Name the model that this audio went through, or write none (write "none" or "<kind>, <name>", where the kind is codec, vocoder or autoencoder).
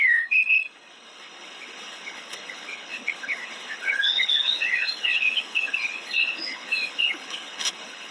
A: codec, HILCodec